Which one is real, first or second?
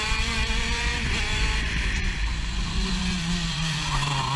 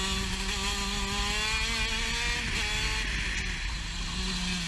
second